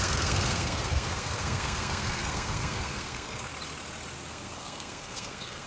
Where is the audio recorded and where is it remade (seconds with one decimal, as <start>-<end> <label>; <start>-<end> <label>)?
0.0-3.5 remade; 3.5-4.3 recorded; 4.3-5.7 remade

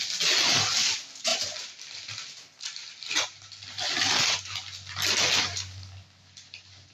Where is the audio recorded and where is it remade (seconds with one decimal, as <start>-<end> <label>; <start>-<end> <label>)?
0.0-6.9 recorded